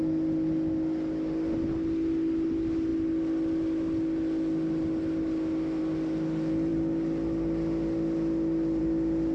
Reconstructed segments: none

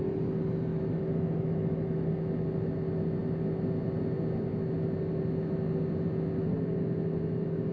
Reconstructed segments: 0.7-2.1 (autoencoder, DAC-VAE)

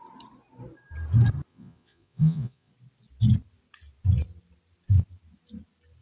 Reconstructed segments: 1.5-2.7 (vocoder, Vocos)

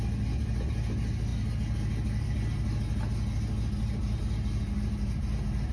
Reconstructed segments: none

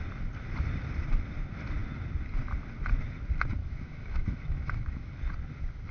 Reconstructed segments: 3.6-5.2 (autoencoder, DAC-VAE)

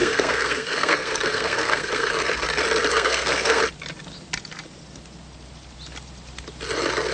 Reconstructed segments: 0.0-2.1 (codec, SNAC); 2.9-3.6

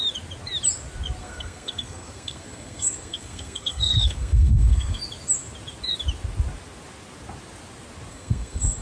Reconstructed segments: 1.2-5.0 (codec, SNAC); 8.1-8.8

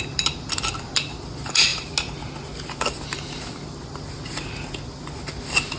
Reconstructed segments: none